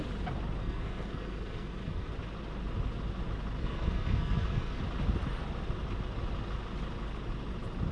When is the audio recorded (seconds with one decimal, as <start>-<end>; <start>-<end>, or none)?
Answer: 0.0-0.6; 2.1-3.6; 4.8-7.9